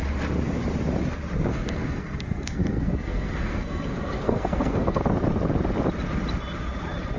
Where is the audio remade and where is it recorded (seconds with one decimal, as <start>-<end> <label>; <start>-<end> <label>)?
0.0-1.5 recorded; 1.5-5.0 remade; 5.0-7.2 recorded

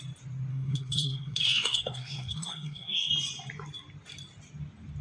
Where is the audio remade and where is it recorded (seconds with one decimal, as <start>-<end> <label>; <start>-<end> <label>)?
0.0-0.5 recorded; 0.5-3.1 remade; 3.1-5.0 recorded

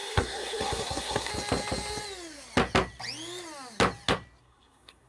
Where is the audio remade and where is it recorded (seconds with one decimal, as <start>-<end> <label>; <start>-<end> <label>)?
0.0-1.3 remade; 1.3-4.4 recorded; 4.4-5.1 remade

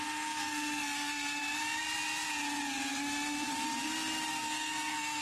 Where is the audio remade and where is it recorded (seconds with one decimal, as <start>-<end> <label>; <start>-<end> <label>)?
0.0-1.4 remade; 1.4-4.3 recorded; 4.3-5.2 remade

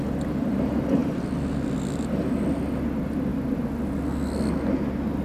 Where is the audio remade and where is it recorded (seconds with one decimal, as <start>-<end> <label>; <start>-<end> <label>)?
0.0-5.2 recorded